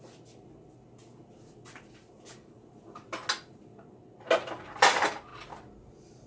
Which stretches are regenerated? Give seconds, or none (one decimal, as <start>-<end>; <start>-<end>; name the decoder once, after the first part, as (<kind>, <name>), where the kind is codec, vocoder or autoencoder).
none